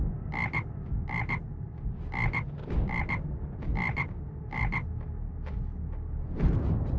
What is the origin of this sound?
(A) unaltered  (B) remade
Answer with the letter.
A